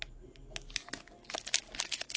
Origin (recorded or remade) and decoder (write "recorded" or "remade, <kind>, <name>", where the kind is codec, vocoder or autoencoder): recorded